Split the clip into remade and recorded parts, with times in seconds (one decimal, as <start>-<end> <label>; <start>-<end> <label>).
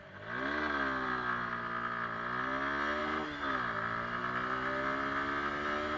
0.0-6.0 recorded